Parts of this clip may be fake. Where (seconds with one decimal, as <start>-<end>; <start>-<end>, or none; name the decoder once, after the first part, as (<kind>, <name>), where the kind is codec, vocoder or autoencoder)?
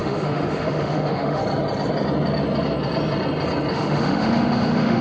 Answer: 0.0-1.4 (autoencoder, DAC-VAE); 3.7-5.0